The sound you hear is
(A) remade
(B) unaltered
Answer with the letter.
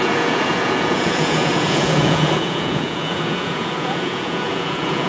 A